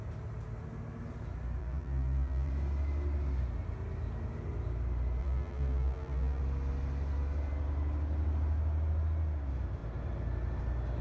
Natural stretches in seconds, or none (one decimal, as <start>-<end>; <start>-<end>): 0.0-1.6; 2.5-5.2; 6.4-11.0